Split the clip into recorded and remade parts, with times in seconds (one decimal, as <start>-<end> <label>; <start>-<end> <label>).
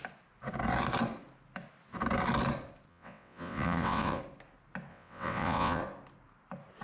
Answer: 0.0-2.9 recorded; 2.9-4.2 remade; 4.2-4.9 recorded; 4.9-5.8 remade; 5.8-6.8 recorded